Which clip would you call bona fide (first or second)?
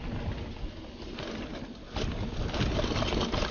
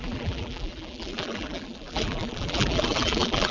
first